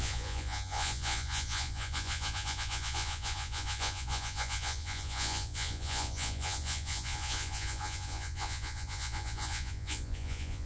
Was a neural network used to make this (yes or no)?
yes